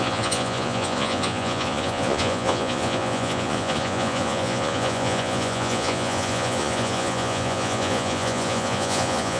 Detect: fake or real fake